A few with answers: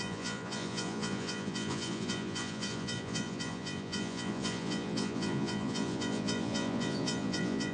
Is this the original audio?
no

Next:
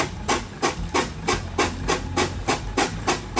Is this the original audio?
yes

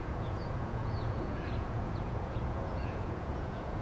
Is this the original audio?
no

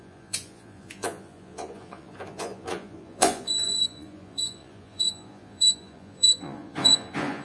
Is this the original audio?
no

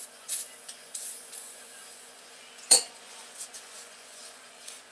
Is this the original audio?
no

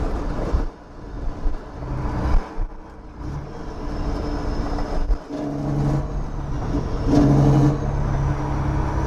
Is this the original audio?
yes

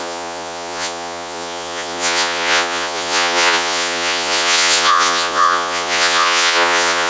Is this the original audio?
no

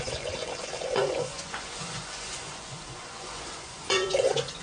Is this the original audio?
no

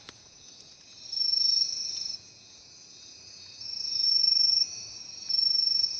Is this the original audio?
no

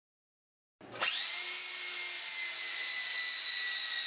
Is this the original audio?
yes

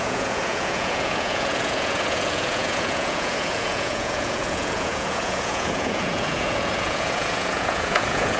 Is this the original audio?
no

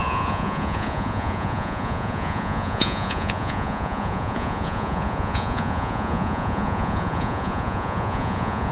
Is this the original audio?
no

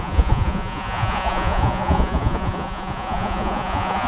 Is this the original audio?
no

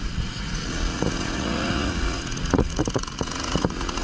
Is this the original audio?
no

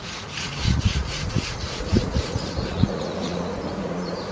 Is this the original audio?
no